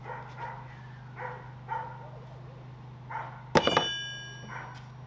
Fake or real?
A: real